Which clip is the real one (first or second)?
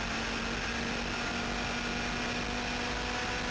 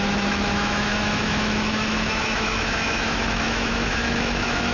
first